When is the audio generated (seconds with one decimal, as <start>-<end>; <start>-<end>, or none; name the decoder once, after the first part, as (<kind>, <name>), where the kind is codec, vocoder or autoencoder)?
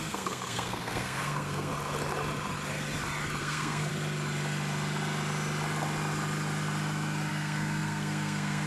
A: 0.0-1.7 (codec, SNAC); 3.4-3.9; 7.3-8.7